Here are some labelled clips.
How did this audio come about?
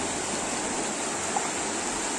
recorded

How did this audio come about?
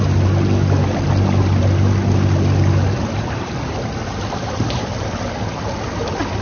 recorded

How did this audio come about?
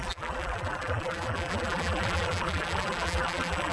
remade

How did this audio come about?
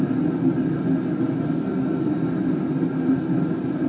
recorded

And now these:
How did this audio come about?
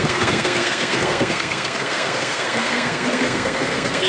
remade